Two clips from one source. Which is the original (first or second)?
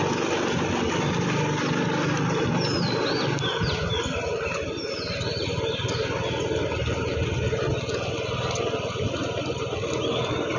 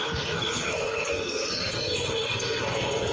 first